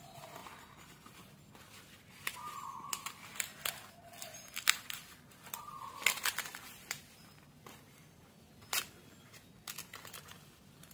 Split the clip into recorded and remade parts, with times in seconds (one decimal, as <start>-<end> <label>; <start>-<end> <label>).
0.0-10.9 recorded